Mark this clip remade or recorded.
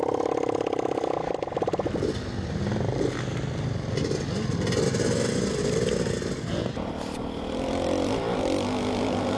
recorded